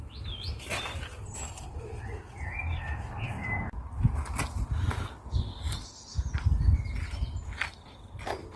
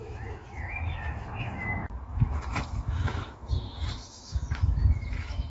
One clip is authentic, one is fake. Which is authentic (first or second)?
first